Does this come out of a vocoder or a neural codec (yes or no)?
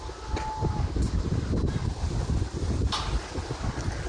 no